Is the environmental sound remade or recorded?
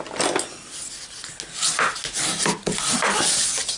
recorded